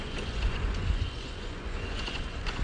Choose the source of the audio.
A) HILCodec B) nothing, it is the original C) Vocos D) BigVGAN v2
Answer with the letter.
C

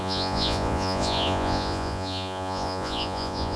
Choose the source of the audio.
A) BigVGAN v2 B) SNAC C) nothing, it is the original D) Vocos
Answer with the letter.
D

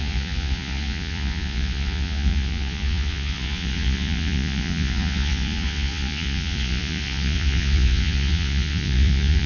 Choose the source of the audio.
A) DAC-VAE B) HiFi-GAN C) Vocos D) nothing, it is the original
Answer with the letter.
C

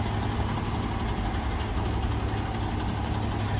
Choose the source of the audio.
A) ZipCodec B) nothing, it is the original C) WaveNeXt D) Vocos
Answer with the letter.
B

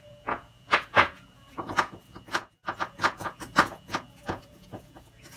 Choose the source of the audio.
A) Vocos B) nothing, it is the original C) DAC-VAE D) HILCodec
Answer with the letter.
A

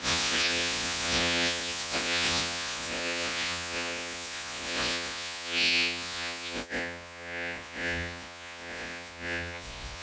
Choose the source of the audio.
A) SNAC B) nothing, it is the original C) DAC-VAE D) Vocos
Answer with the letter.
D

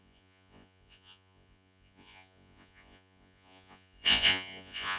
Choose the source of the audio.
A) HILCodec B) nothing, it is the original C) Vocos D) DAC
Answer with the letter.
C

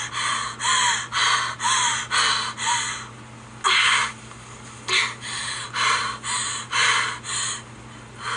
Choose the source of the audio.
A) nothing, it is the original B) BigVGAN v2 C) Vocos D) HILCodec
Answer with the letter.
A